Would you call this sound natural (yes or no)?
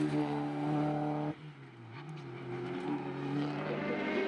yes